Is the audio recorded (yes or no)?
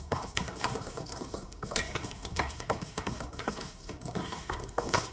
no